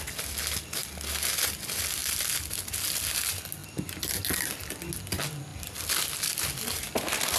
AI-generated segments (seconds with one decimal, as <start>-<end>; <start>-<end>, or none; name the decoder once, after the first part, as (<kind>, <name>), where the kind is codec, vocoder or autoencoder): 0.8-1.3 (vocoder, BigVGAN v2); 5.5-6.9